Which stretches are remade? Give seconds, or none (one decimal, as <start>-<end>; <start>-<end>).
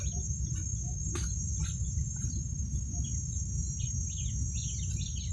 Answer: none